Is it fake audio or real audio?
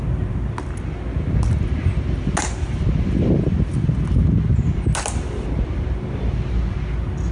real